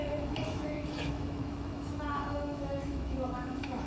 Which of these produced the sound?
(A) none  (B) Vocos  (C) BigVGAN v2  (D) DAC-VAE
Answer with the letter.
D